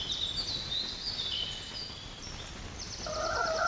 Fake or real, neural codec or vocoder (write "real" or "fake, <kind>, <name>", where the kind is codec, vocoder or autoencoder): real